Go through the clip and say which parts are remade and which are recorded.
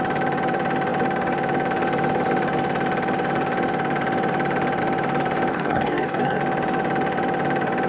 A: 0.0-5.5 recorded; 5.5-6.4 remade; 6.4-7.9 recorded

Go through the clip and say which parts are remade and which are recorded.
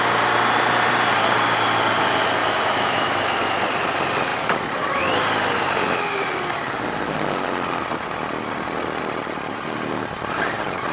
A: 0.0-2.4 recorded; 2.4-3.4 remade; 3.4-10.9 recorded